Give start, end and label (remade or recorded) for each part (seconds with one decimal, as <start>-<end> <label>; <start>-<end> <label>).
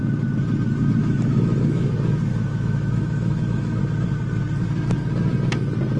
0.0-1.0 recorded; 1.0-1.9 remade; 1.9-2.3 recorded; 2.3-3.8 remade; 3.8-6.0 recorded